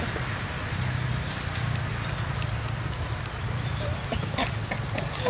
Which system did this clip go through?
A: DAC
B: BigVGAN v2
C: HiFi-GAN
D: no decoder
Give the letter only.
D